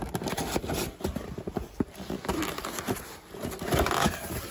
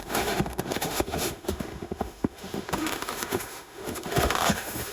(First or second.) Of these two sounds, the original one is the first